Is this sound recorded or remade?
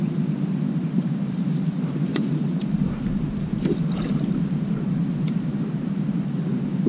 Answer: remade